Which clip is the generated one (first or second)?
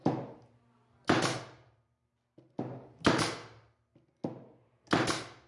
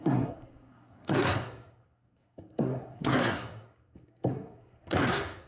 second